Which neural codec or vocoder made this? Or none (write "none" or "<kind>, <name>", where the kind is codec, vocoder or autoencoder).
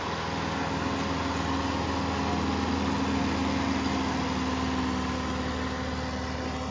none